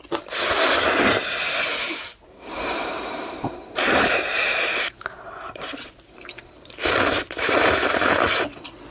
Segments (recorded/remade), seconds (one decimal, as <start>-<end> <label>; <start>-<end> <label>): 0.0-2.1 recorded; 2.1-6.8 remade; 6.8-8.9 recorded